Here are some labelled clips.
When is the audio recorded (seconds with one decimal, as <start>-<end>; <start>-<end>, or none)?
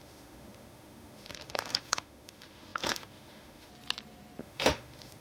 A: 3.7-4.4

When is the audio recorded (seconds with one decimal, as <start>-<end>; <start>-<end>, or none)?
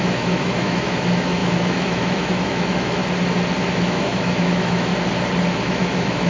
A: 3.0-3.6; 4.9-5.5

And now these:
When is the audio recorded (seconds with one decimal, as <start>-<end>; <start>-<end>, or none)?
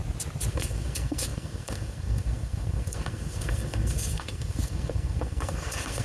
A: 0.0-0.5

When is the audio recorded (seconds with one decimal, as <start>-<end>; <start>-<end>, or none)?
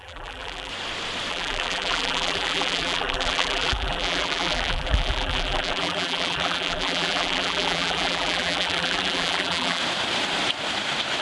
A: 0.7-1.3; 9.8-11.2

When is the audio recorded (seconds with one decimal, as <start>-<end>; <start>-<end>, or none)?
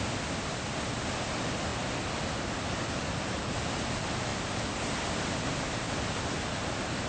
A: 0.0-7.1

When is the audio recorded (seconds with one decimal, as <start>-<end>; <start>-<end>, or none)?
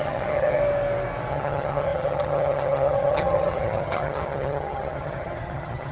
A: 0.6-1.3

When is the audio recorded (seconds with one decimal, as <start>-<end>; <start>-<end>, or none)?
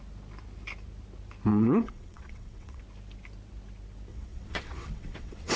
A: 0.0-1.5; 2.8-4.1